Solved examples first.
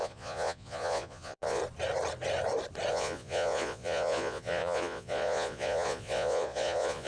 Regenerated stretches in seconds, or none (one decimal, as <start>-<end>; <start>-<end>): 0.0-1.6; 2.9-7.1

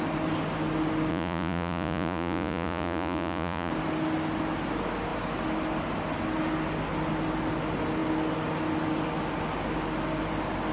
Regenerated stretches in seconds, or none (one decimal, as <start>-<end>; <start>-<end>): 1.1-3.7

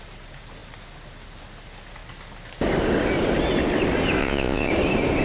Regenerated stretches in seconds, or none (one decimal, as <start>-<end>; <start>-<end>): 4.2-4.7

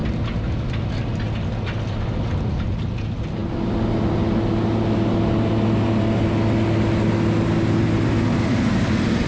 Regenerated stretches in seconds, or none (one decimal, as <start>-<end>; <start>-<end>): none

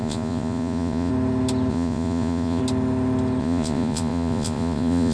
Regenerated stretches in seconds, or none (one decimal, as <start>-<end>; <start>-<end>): 0.0-1.1; 1.7-2.6; 3.4-5.1

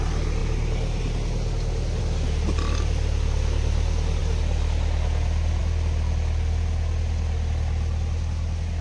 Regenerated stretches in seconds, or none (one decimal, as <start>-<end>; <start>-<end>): none